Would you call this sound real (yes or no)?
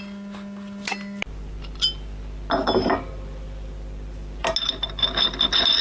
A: yes